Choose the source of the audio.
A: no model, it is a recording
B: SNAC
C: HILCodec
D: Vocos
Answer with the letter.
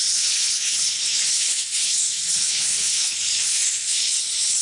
C